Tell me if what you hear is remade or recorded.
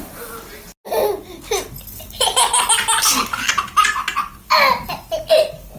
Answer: recorded